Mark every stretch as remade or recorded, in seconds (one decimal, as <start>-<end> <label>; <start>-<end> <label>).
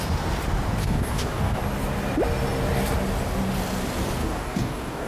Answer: 0.0-0.8 recorded; 0.8-1.6 remade; 1.6-4.2 recorded; 4.2-5.1 remade